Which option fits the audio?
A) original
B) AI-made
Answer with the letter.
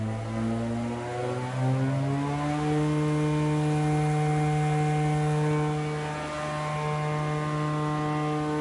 A